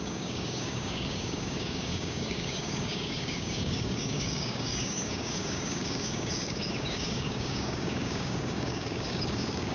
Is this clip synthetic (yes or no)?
yes